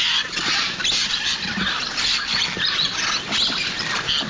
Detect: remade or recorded recorded